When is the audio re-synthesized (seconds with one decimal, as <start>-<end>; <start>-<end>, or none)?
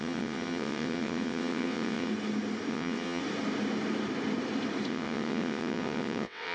0.0-2.1; 2.7-3.2; 4.9-6.5